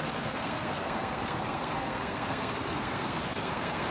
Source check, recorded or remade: remade